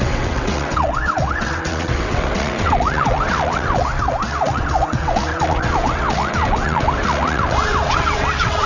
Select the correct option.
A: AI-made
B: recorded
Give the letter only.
A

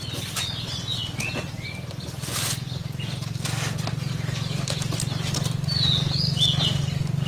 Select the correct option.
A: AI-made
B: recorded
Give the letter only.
B